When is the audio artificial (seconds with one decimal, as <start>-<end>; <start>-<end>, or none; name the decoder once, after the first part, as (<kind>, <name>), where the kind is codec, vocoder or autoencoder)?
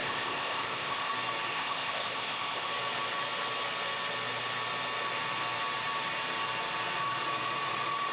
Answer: 0.0-1.1 (codec, ZipCodec); 1.5-2.7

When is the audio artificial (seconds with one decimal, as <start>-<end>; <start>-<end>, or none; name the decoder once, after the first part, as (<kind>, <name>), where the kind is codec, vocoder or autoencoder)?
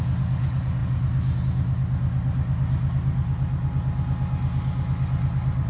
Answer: none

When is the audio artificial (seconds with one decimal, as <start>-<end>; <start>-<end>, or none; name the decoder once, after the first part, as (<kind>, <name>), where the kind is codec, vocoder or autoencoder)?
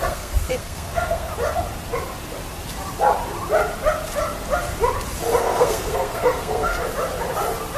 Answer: 0.0-1.3 (codec, SNAC); 5.4-6.8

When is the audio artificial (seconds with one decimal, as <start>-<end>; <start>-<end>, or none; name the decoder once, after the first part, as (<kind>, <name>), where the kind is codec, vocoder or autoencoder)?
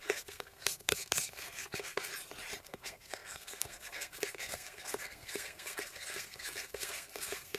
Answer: 0.0-2.1 (codec, SNAC); 2.6-7.6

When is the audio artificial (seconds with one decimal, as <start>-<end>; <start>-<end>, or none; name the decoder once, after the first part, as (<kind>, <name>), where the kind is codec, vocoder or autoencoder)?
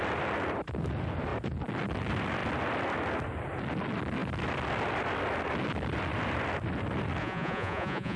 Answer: 7.2-8.2 (vocoder, Vocos)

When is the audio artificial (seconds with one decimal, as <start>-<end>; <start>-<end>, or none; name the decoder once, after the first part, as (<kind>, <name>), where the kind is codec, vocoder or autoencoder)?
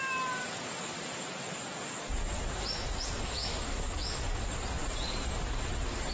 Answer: 3.4-4.2 (autoencoder, DAC-VAE)